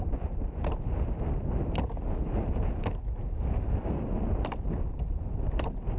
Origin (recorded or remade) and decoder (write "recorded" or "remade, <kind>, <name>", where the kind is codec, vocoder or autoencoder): recorded